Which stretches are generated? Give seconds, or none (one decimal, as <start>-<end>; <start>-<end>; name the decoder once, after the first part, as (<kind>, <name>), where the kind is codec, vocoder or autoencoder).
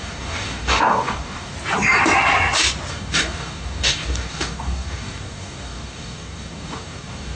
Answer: 0.0-1.5 (codec, DAC); 2.9-7.4